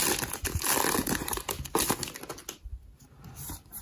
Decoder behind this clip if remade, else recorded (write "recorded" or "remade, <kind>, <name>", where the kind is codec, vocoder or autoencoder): recorded